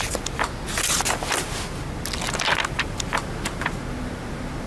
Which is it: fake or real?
real